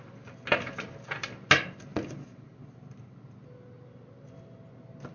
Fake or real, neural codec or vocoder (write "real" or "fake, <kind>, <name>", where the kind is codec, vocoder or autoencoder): real